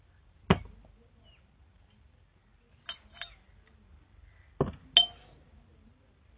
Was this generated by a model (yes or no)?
no